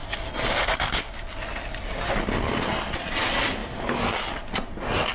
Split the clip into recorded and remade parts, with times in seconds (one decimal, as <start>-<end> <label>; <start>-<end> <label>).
0.0-5.1 recorded